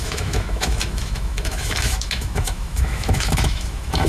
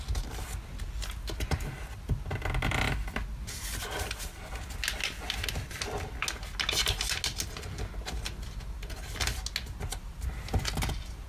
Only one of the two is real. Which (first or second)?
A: second